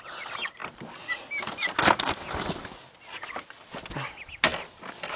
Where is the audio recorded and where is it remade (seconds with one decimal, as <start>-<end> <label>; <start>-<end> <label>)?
0.0-5.2 recorded